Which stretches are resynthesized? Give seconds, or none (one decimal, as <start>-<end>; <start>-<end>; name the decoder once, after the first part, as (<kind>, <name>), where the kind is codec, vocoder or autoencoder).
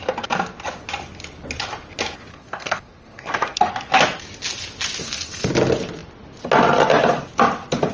2.3-3.7 (codec, SNAC); 5.0-5.5